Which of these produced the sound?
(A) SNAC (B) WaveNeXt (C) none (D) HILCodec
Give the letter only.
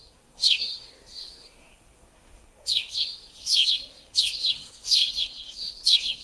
A